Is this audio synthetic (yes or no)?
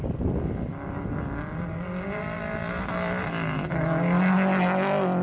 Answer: no